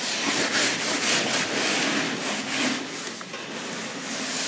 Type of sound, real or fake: real